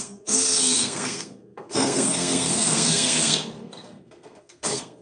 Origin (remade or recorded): remade